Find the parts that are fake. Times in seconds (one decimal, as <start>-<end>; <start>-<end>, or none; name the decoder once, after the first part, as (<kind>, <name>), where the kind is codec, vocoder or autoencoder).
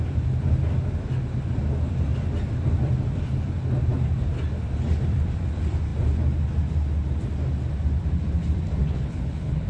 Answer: 8.8-9.7 (codec, HILCodec)